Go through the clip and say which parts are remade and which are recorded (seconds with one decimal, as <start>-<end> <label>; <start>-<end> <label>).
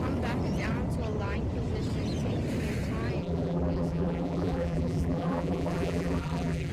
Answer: 0.0-3.2 recorded; 3.2-6.7 remade